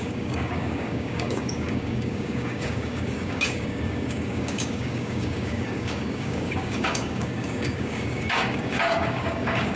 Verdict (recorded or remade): remade